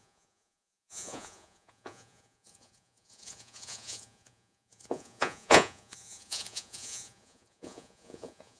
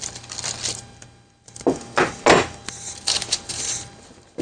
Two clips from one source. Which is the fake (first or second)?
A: first